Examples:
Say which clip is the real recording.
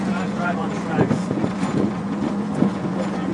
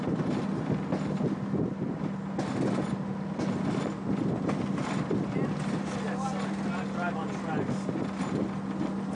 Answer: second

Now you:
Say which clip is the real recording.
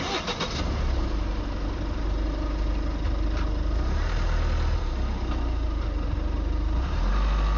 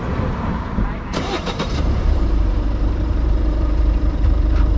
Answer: first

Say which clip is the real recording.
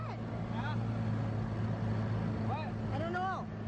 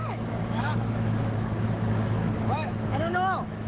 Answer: first